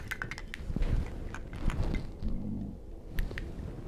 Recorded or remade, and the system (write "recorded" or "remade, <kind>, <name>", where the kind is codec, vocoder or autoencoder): recorded